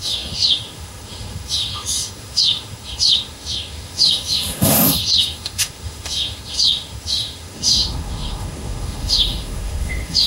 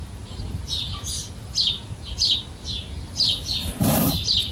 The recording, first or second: second